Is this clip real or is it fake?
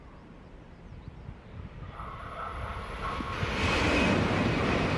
real